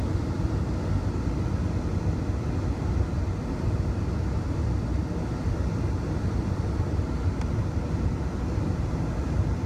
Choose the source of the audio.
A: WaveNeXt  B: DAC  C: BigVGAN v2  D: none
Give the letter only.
D